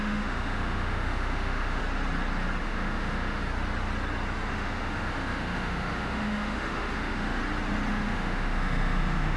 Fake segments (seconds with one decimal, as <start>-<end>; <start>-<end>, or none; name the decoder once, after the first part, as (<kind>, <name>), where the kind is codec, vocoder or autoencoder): 0.0-1.8 (autoencoder, DAC-VAE); 2.6-3.4; 4.5-7.4; 7.9-9.4